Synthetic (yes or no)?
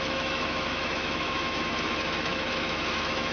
yes